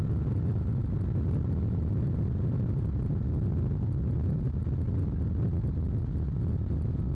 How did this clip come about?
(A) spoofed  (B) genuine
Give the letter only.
B